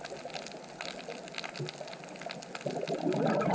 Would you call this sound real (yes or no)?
yes